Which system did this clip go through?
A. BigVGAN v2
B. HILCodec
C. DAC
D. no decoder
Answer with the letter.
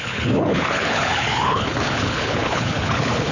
B